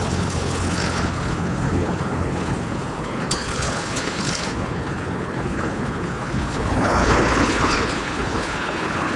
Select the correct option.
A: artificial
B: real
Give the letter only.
A